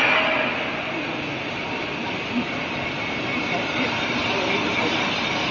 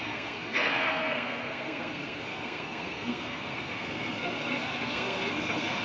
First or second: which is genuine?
first